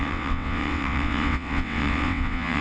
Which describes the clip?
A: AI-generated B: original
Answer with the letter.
A